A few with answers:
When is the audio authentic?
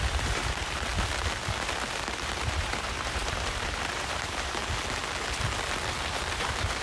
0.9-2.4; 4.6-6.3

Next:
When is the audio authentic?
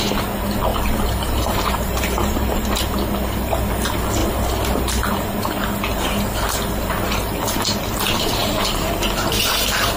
0.0-0.7; 2.8-8.4; 9.4-10.0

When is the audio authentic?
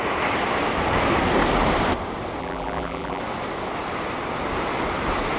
0.0-2.4; 3.2-5.4